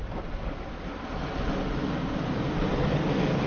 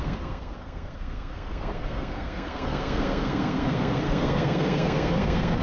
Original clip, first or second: first